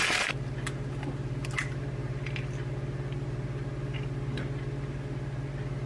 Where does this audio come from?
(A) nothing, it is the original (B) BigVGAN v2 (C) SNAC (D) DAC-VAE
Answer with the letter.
A